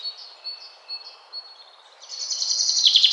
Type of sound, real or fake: real